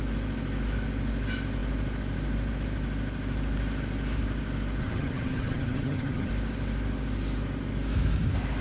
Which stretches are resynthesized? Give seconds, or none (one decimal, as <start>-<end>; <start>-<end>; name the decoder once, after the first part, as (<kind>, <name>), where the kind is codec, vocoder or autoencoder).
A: 4.8-6.3 (vocoder, HiFi-GAN)